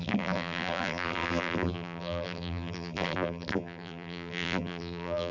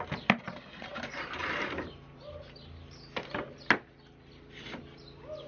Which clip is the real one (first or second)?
second